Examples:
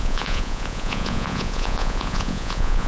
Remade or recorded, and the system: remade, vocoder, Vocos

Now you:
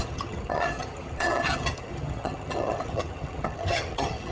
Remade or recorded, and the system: remade, vocoder, HiFi-GAN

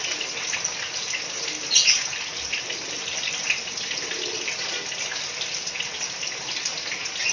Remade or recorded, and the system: recorded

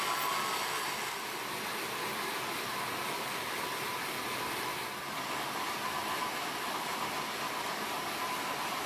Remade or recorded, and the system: recorded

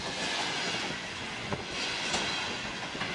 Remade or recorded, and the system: remade, vocoder, Vocos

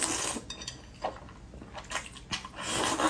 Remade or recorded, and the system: recorded